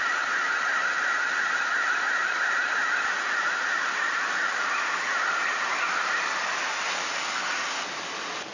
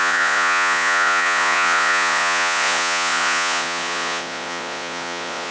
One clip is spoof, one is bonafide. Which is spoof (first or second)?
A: second